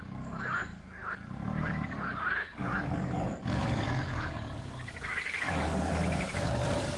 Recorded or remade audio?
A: remade